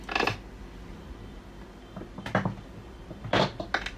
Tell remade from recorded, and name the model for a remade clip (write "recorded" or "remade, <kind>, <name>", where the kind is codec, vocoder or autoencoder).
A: recorded